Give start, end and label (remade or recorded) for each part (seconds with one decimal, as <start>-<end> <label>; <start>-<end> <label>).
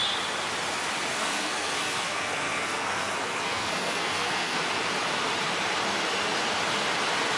0.0-1.1 recorded; 1.1-4.6 remade; 4.6-7.4 recorded